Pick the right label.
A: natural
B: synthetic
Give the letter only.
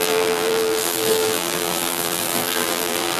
B